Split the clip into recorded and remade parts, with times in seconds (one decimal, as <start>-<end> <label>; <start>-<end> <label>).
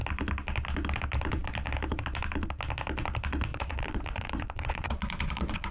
0.0-3.5 recorded; 3.5-5.7 remade